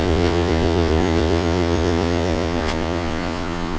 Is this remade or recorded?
remade